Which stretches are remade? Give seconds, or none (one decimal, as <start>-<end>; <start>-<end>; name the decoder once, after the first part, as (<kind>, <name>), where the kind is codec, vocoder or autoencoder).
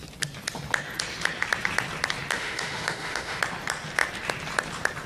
2.3-3.4 (autoencoder, DAC-VAE)